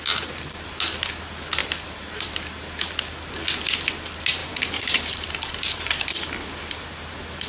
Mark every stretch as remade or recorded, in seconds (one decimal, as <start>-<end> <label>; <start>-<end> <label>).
0.0-1.6 recorded; 1.6-2.3 remade; 2.3-4.4 recorded; 4.4-6.1 remade; 6.1-7.5 recorded